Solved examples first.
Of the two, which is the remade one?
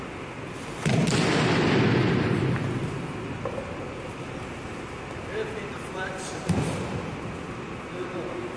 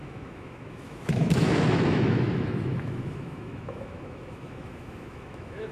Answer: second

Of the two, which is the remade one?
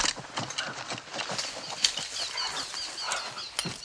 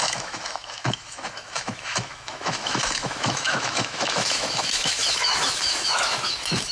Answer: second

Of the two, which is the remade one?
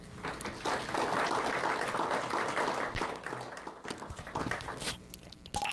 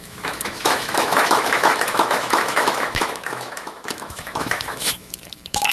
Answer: second